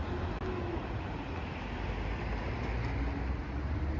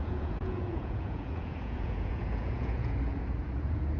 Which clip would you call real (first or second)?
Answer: first